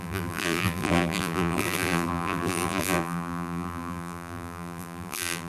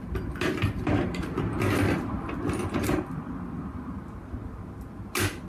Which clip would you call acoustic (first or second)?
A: second